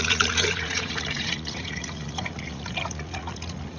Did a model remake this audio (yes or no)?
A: yes